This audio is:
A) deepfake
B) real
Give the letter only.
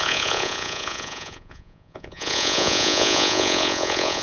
A